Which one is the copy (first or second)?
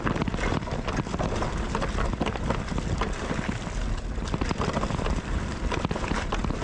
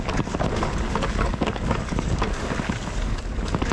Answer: second